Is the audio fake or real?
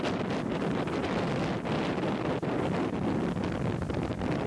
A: real